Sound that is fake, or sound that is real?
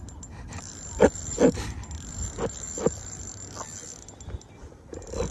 real